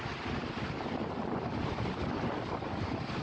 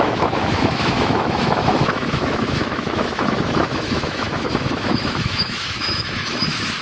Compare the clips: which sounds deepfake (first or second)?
second